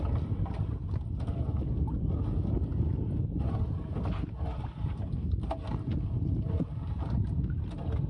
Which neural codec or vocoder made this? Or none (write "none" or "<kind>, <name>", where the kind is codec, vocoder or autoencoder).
none